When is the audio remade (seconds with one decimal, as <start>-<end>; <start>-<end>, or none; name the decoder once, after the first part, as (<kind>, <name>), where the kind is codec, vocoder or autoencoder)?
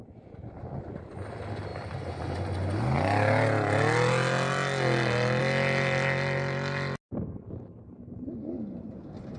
none